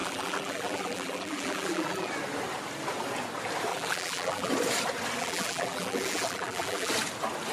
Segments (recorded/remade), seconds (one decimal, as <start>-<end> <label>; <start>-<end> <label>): 0.0-2.1 remade; 2.1-3.7 recorded; 3.7-4.5 remade; 4.5-5.2 recorded; 5.2-6.9 remade; 6.9-7.5 recorded